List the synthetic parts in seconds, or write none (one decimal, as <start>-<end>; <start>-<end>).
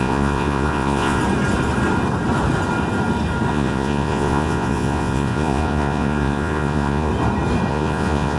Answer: 0.0-1.2; 3.5-7.1; 7.7-8.4